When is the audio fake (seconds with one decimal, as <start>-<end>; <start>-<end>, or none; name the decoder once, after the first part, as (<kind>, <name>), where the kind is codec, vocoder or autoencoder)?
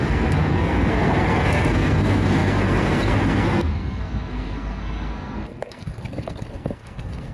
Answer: 0.0-7.3 (codec, SNAC)